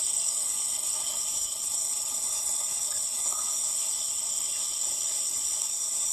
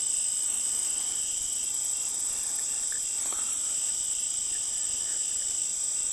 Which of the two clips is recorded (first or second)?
second